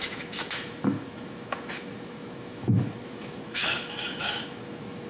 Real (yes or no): no